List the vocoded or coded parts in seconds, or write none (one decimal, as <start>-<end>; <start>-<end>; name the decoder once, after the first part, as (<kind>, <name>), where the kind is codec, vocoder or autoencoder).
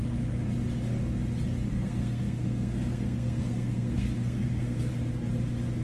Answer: 1.7-4.9 (codec, SNAC)